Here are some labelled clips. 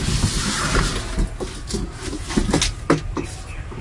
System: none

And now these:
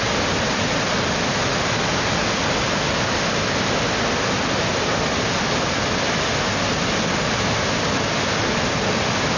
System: none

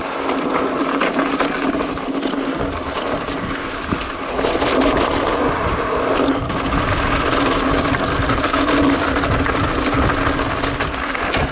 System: none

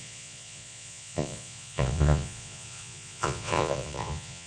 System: vocoder, Vocos